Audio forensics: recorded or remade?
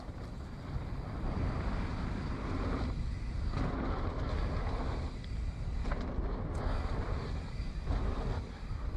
recorded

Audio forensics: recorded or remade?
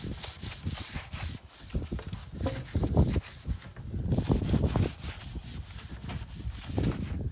recorded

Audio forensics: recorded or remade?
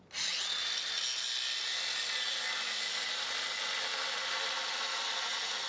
recorded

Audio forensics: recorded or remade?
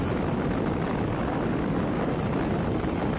recorded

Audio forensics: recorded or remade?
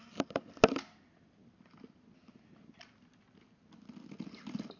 recorded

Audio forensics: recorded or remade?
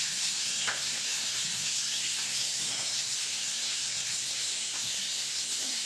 remade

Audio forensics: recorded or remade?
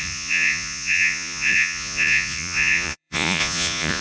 remade